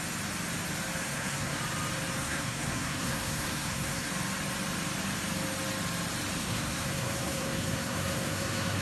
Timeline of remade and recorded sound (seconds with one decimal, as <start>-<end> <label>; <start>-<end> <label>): 0.0-1.0 recorded; 1.0-1.6 remade; 1.6-2.2 recorded; 2.2-4.1 remade; 4.1-6.4 recorded; 6.4-8.8 remade